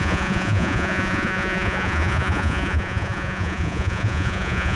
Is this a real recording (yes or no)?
no